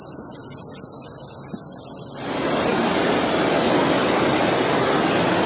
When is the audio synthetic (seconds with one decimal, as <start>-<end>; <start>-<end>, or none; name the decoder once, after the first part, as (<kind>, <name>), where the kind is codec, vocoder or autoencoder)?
0.0-0.4 (vocoder, BigVGAN v2); 1.6-5.5